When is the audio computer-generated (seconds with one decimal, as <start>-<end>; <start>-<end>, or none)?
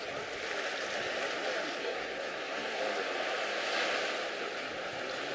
1.8-2.8